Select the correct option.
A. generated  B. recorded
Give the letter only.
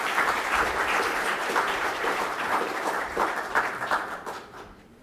A